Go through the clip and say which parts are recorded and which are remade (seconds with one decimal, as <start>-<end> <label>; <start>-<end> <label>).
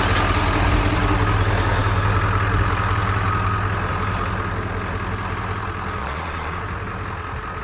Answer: 0.0-6.0 recorded; 6.0-6.6 remade; 6.6-7.6 recorded